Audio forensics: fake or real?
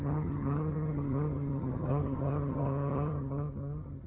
fake